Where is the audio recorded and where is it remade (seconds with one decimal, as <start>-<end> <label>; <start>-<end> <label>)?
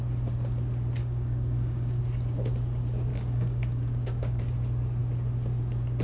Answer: 0.0-1.0 recorded; 1.0-2.0 remade; 2.0-3.1 recorded; 3.1-4.4 remade; 4.4-6.0 recorded